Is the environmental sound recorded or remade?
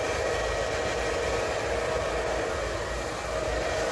recorded